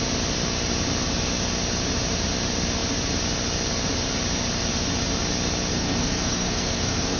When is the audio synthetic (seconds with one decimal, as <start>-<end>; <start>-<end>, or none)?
5.7-7.2